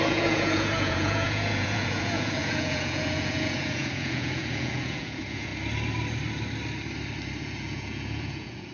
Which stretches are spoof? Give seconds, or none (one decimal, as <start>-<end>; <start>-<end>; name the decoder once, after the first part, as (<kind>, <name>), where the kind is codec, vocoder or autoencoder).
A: 0.0-5.5 (vocoder, Vocos); 7.4-8.7